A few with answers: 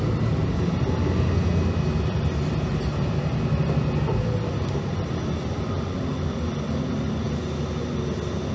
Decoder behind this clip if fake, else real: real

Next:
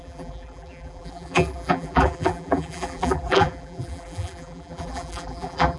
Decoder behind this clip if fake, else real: fake, vocoder, BigVGAN v2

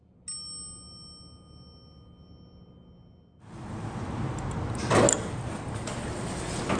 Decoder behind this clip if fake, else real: real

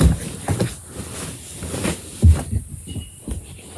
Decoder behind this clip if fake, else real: real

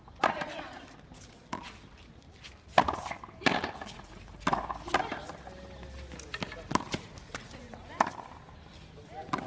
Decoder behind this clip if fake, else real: real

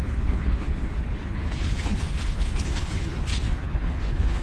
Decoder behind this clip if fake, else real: fake, codec, HILCodec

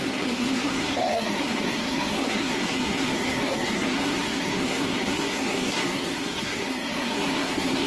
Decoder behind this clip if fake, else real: fake, codec, SNAC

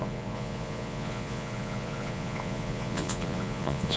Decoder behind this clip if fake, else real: fake, vocoder, Vocos